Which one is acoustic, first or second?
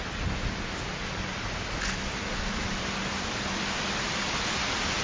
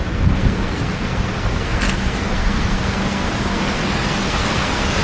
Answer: first